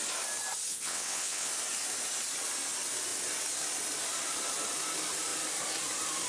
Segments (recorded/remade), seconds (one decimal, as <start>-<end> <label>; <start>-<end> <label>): 0.0-0.7 recorded; 0.7-1.5 remade; 1.5-6.3 recorded